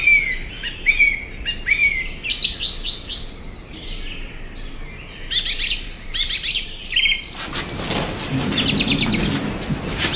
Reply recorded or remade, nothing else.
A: recorded